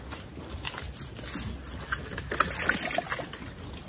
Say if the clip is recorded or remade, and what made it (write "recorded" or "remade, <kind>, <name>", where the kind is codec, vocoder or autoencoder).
recorded